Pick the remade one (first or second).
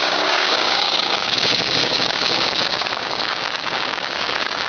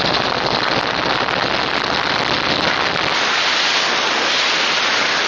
first